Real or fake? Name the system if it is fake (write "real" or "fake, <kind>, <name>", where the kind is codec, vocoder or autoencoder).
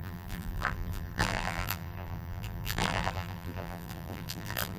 fake, vocoder, BigVGAN v2